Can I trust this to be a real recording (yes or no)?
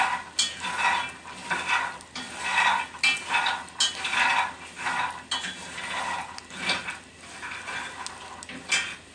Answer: yes